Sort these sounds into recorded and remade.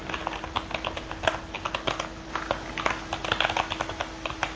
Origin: recorded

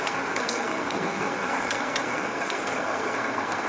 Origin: remade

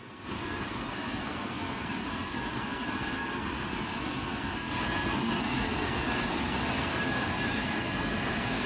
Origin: remade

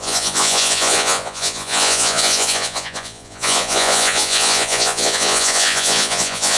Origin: remade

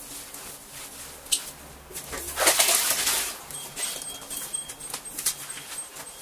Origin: recorded